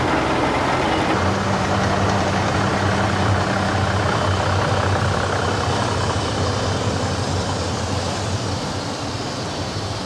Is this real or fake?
real